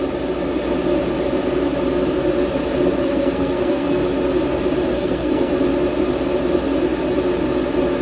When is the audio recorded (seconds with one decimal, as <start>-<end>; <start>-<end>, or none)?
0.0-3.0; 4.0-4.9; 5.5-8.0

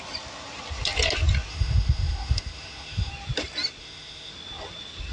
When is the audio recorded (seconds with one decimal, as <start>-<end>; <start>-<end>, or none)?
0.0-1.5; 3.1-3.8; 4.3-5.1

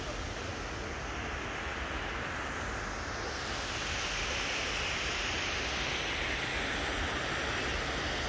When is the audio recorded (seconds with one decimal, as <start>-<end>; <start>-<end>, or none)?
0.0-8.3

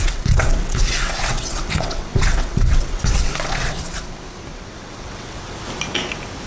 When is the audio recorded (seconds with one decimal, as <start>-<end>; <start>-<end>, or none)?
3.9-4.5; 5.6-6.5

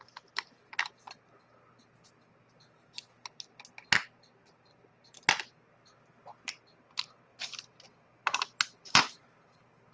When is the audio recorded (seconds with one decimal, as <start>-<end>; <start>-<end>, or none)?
0.0-9.9